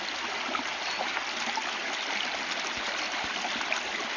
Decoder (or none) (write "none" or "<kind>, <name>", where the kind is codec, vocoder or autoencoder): none